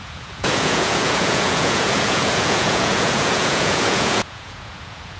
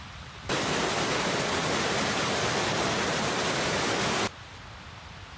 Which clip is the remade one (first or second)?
first